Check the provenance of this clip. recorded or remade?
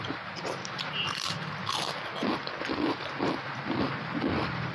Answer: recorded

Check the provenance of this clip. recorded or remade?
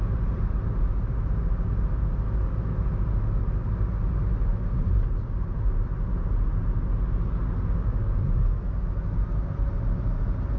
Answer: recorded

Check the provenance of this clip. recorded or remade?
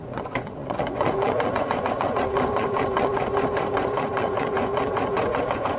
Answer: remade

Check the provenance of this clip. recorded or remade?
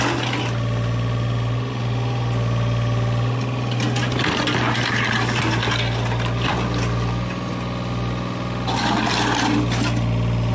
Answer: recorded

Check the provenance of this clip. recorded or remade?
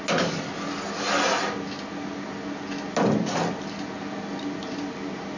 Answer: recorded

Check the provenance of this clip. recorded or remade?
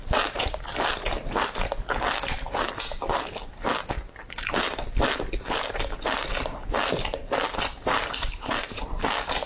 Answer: recorded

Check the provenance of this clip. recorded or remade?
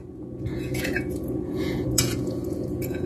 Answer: remade